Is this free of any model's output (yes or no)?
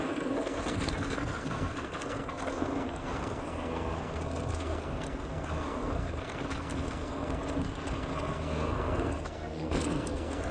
no